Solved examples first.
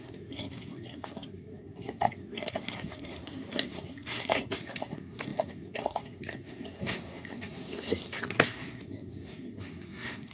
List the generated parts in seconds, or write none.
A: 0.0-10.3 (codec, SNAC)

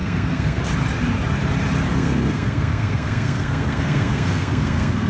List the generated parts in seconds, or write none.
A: 0.0-0.6 (codec, SNAC); 1.9-5.1

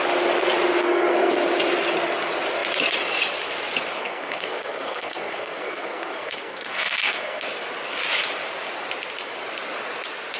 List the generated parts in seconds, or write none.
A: 0.8-1.3 (codec, SNAC); 4.0-7.4

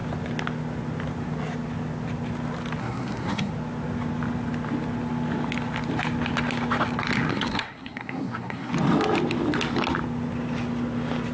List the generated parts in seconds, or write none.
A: 2.8-3.5 (codec, SNAC); 7.3-8.7

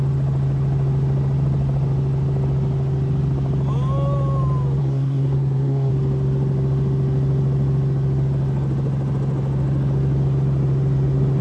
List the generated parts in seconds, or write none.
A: 4.8-5.9 (codec, SNAC)

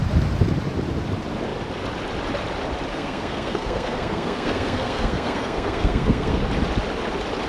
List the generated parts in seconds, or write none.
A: 2.9-6.4 (codec, SNAC)

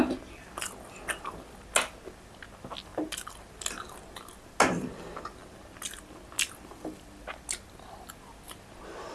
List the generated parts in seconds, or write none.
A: none

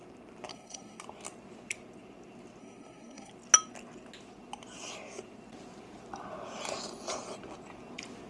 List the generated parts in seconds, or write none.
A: 0.5-1.0 (codec, SNAC); 2.6-3.3